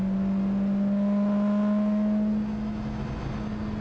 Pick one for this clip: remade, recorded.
recorded